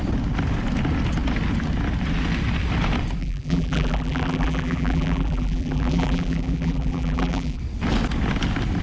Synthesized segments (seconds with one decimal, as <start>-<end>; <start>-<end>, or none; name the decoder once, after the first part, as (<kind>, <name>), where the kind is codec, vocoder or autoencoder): 3.2-7.6 (vocoder, BigVGAN v2)